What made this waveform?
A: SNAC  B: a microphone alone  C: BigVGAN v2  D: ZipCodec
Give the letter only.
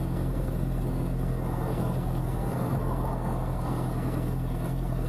A